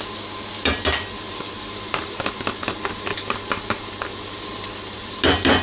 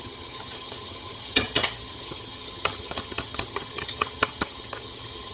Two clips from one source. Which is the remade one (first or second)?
second